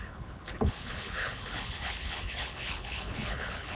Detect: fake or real fake